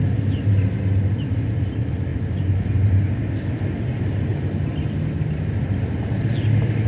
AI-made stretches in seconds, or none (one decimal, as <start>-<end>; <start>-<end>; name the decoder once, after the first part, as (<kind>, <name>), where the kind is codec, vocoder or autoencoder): 2.1-3.6 (vocoder, BigVGAN v2)